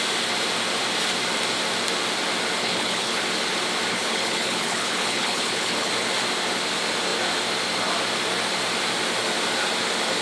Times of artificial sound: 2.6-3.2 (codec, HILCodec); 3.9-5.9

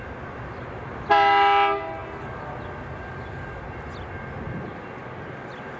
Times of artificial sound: none

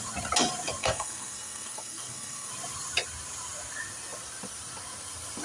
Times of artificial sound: 0.8-2.5 (codec, SNAC)

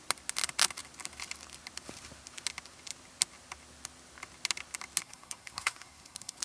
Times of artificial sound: 5.0-6.4 (codec, SNAC)

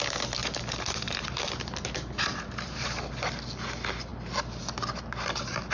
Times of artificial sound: 0.4-3.0 (vocoder, BigVGAN v2)

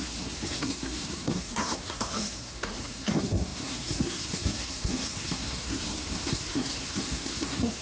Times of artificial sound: 0.0-7.8 (codec, SNAC)

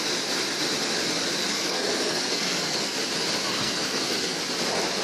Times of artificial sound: 1.5-3.0 (codec, SNAC); 3.5-4.4

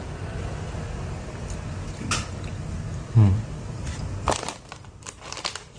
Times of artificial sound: none